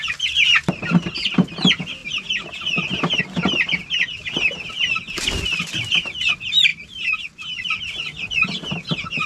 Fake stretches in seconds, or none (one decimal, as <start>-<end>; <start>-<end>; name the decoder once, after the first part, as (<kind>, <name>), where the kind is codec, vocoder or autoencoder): none